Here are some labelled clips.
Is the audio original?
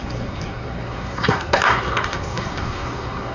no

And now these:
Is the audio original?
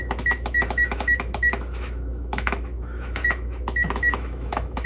no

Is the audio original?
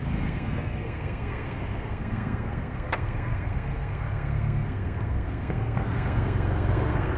no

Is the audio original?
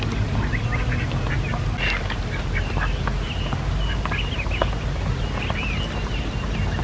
yes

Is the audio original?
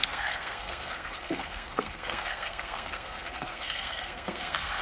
no